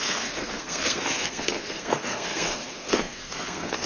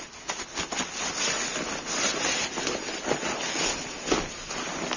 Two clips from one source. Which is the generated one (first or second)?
first